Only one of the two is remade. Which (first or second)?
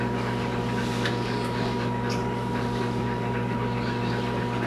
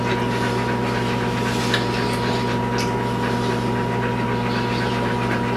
first